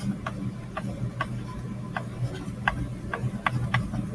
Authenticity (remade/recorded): recorded